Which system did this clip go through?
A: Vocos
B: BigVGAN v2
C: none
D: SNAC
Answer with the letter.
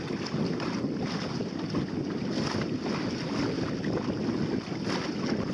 C